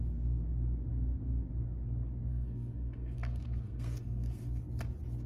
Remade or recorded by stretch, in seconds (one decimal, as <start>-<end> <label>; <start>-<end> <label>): 0.0-2.3 recorded; 2.3-4.6 remade; 4.6-5.3 recorded